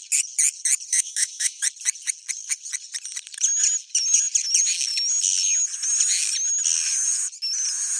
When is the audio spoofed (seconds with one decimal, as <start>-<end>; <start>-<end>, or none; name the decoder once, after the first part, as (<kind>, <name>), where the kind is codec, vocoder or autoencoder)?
0.9-1.6 (autoencoder, DAC-VAE)